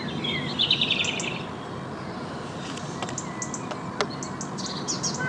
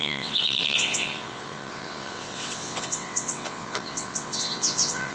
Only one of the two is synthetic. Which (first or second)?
second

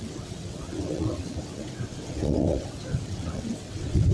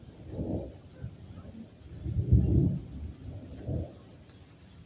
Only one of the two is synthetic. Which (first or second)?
first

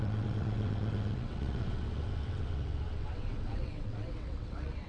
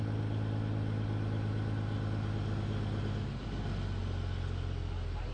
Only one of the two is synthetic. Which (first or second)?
first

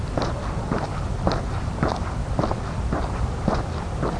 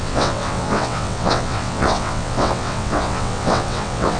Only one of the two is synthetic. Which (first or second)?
second